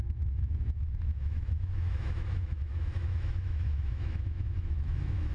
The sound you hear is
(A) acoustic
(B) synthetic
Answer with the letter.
B